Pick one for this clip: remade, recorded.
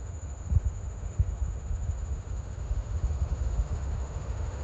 remade